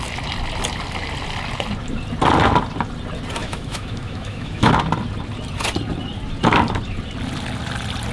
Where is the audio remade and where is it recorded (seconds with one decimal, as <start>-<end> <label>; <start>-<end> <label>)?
0.0-3.4 recorded; 3.4-4.7 remade; 4.7-8.1 recorded